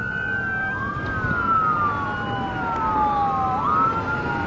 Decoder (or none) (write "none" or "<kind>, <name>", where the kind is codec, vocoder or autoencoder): none